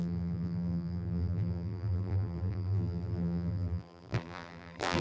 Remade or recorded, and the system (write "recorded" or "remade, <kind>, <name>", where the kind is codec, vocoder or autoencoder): remade, vocoder, BigVGAN v2